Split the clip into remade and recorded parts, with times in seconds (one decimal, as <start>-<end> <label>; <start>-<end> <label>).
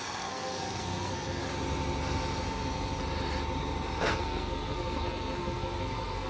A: 0.0-1.4 remade; 1.4-4.0 recorded; 4.0-6.3 remade